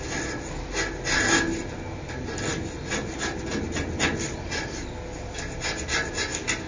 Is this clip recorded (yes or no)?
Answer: yes